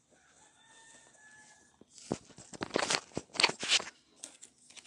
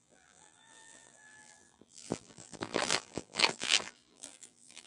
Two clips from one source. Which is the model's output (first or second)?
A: second